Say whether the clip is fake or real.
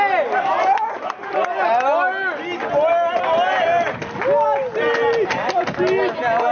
real